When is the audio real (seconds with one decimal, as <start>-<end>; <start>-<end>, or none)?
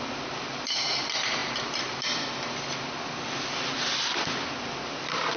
0.0-5.4